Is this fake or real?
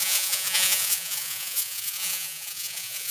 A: fake